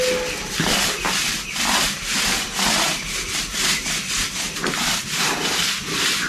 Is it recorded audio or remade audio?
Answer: recorded